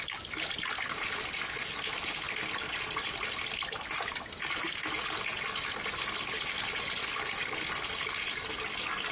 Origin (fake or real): real